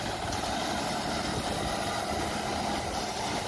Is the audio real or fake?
real